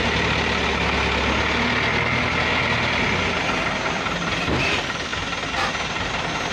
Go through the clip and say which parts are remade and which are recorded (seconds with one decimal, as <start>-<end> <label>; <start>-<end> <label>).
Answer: 0.0-6.5 recorded